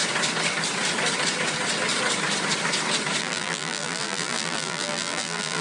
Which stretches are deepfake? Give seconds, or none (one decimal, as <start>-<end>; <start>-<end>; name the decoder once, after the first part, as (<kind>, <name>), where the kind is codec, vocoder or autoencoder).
3.2-5.6 (vocoder, BigVGAN v2)